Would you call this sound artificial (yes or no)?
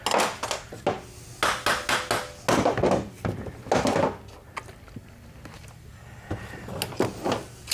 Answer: no